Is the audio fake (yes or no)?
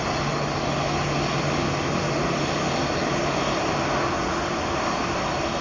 no